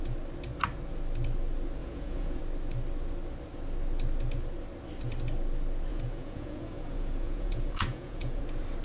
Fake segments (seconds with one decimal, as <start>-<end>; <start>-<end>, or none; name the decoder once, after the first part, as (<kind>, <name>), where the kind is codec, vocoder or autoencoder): 1.8-2.4 (vocoder, Vocos); 5.9-8.4